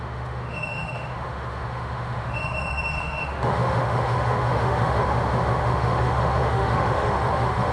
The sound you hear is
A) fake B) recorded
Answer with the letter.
A